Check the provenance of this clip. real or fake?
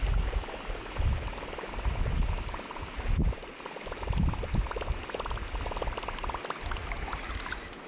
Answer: real